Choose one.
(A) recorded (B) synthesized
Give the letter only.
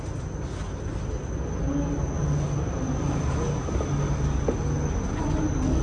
A